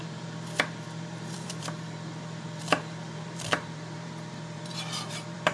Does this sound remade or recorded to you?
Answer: remade